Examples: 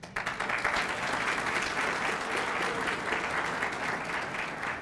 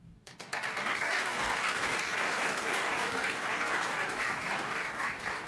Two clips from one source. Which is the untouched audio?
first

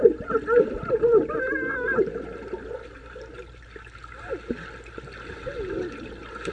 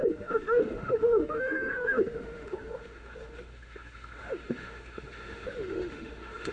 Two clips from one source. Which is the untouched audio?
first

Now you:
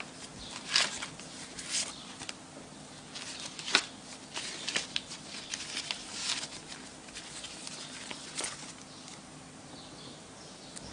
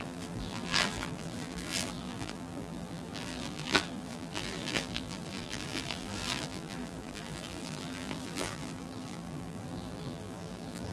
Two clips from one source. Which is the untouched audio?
first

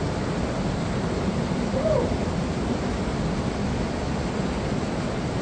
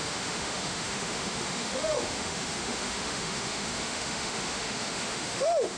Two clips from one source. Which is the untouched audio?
first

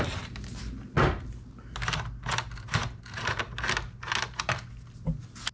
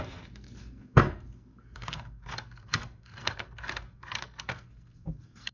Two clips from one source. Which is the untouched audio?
first